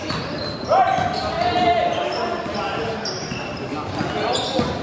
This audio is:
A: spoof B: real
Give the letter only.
B